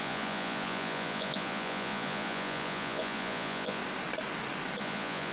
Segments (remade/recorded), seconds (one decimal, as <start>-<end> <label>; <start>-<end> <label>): 0.0-3.8 remade; 3.8-4.8 recorded; 4.8-5.3 remade